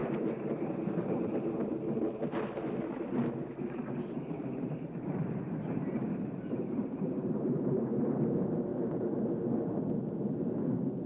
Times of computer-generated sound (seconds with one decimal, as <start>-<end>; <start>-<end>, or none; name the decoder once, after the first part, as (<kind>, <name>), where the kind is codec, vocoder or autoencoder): 0.0-0.7 (vocoder, BigVGAN v2); 3.1-8.1